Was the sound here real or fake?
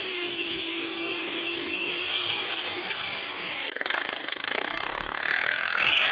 fake